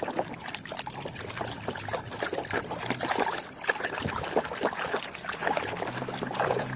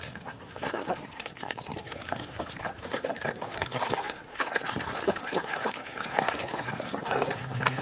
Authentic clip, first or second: first